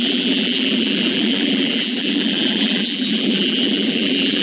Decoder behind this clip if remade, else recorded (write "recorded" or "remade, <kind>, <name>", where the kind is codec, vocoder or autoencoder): remade, vocoder, BigVGAN v2